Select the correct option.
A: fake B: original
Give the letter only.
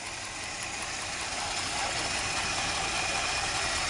B